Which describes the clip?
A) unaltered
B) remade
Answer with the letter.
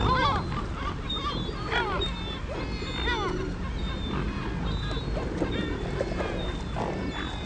A